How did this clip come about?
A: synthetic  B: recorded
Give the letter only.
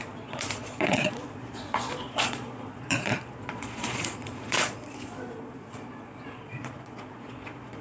A